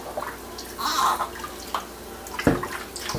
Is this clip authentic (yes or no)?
yes